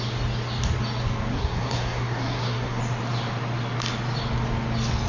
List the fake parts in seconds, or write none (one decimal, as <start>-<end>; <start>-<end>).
1.3-2.8